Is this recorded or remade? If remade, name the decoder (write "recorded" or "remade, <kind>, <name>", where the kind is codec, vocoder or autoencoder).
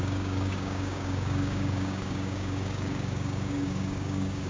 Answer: remade, codec, DAC